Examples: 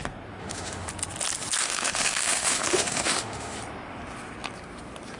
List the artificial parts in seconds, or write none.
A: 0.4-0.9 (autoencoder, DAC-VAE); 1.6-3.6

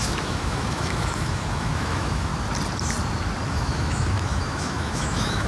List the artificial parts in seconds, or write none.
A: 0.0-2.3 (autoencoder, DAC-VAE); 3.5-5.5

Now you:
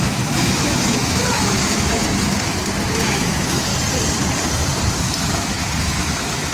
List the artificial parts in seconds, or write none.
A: 0.0-2.6 (autoencoder, DAC-VAE); 3.1-3.7; 4.9-6.5

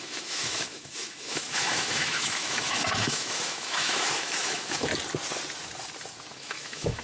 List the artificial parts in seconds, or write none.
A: 0.0-4.9 (autoencoder, DAC-VAE); 6.3-7.0

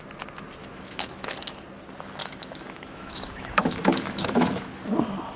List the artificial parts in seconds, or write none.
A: 0.6-1.3 (autoencoder, DAC-VAE); 2.2-4.8